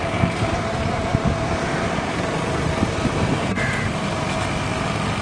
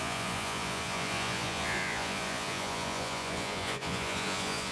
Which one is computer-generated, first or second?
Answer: second